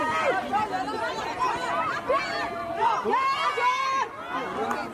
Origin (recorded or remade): recorded